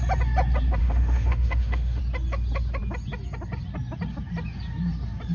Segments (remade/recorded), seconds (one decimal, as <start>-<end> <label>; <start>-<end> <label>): 0.0-0.8 recorded; 0.8-2.0 remade; 2.0-5.3 recorded